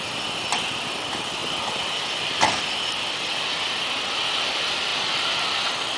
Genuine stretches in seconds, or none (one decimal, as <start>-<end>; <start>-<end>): 0.0-6.0